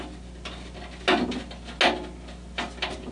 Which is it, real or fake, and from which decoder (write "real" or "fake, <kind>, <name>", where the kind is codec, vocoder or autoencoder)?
real